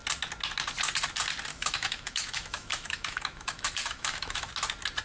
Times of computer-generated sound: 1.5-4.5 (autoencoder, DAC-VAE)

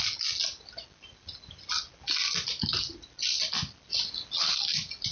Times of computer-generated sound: none

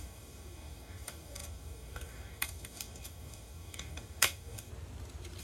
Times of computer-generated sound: 0.0-4.7 (codec, DAC)

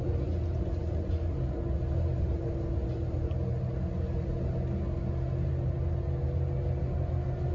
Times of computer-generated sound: none

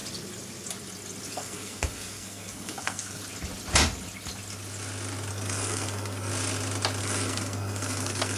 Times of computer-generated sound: 1.3-3.2 (codec, SNAC); 5.3-6.3; 7.0-8.4

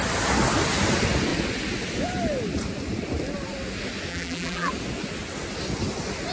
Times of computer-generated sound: 4.1-4.7 (vocoder, BigVGAN v2)

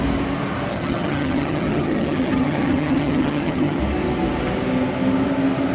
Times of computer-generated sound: 0.7-3.8 (vocoder, HiFi-GAN)

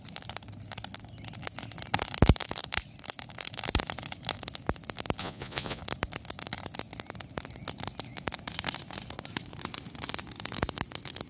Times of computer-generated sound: 5.2-5.8 (vocoder, Vocos)